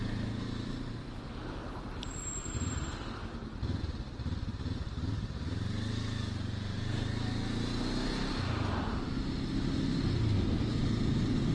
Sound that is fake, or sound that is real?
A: real